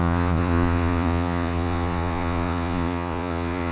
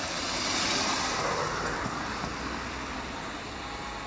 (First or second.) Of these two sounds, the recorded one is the second